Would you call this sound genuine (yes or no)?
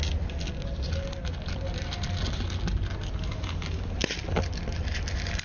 yes